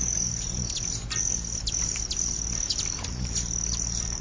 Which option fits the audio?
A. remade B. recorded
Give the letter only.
B